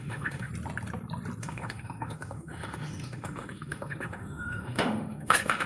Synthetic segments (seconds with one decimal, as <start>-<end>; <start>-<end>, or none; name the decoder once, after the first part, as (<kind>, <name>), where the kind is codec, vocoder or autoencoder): 0.0-0.5 (autoencoder, DAC-VAE); 1.4-5.7